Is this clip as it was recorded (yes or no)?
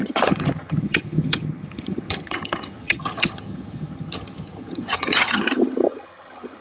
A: no